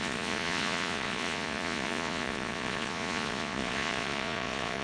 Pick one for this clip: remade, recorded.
remade